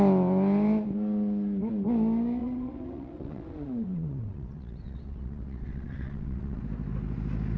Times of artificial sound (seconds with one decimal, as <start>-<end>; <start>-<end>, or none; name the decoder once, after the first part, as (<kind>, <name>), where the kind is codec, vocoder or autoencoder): 2.4-6.6 (vocoder, WaveNeXt)